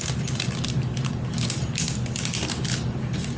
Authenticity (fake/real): real